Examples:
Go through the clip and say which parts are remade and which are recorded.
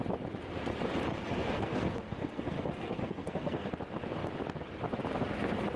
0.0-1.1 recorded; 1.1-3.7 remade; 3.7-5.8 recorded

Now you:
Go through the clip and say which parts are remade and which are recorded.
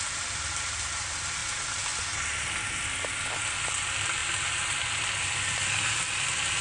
0.0-6.6 recorded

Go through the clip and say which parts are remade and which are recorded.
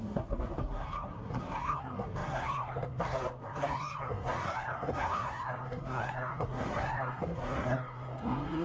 0.0-8.6 remade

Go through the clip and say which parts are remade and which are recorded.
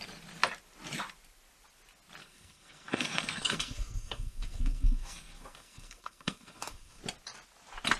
0.0-2.2 recorded; 2.2-7.0 remade; 7.0-8.0 recorded